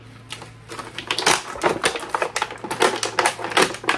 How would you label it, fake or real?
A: real